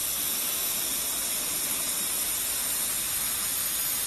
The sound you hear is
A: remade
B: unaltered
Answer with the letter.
B